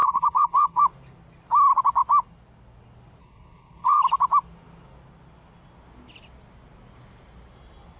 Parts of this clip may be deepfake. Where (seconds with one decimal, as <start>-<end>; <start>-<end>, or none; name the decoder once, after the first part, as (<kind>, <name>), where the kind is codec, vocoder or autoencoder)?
0.0-0.8 (codec, HILCodec); 3.2-4.0